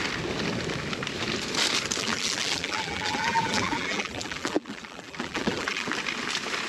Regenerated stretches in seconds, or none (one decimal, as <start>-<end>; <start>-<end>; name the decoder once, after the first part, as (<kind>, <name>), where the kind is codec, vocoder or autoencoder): 2.0-5.9 (vocoder, BigVGAN v2)

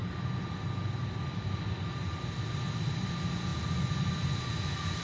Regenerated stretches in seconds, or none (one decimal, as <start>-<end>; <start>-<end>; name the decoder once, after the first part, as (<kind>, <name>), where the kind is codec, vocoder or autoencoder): none

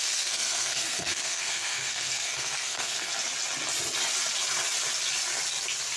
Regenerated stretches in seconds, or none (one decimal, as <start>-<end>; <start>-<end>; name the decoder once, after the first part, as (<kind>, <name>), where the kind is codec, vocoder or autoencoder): 0.0-3.1 (codec, SNAC)